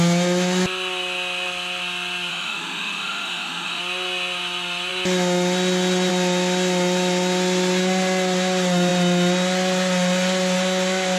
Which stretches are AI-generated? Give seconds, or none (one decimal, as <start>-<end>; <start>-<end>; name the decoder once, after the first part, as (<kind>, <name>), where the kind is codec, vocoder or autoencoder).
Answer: 2.3-3.8 (autoencoder, DAC-VAE)